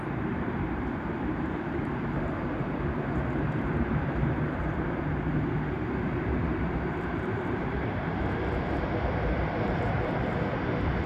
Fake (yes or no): yes